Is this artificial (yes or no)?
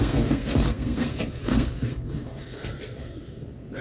yes